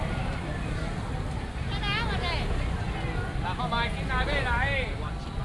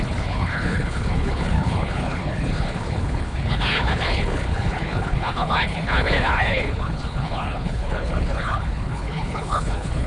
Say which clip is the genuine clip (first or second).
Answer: first